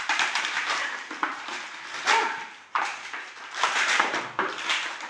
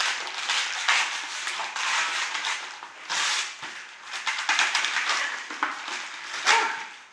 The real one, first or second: second